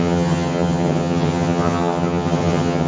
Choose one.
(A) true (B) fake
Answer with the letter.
B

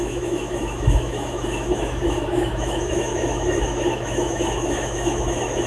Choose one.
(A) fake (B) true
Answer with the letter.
A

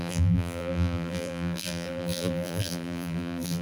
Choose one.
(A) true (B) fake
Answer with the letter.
B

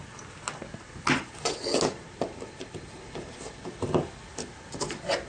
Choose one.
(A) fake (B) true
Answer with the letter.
B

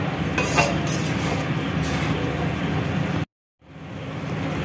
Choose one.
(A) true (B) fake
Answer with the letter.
A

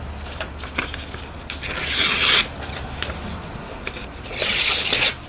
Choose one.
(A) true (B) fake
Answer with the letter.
A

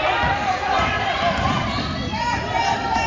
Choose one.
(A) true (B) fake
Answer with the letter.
A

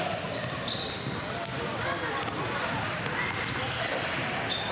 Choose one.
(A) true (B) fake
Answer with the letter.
A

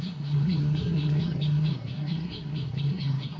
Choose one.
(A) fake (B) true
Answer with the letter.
A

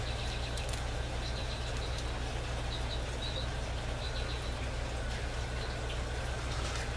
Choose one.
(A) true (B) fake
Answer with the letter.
A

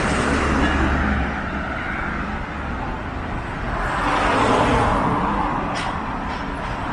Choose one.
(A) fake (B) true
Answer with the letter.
B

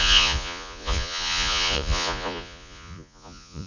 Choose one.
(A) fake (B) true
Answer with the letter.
A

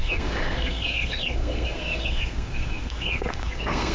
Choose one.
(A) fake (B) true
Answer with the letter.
A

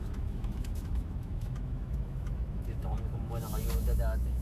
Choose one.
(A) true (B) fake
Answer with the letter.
B